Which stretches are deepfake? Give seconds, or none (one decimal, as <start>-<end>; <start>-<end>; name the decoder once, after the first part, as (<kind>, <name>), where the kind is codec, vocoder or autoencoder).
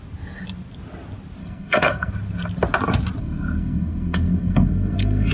1.4-2.1 (codec, SNAC); 3.2-5.3